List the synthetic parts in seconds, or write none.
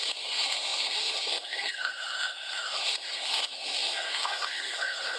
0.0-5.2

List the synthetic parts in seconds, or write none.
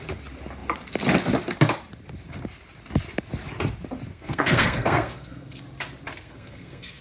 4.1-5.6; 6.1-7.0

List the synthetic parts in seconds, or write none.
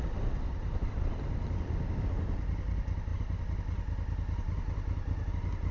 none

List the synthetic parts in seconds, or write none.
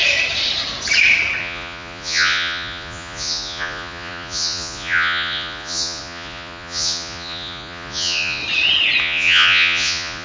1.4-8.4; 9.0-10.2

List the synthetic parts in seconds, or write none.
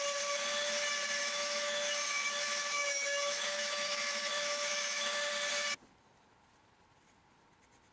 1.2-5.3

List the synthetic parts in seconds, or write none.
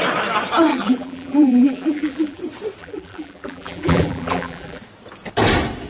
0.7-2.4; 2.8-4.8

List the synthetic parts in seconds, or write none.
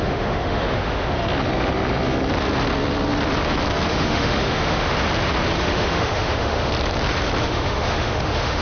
0.0-1.2; 3.9-4.9; 5.6-6.7; 7.4-8.6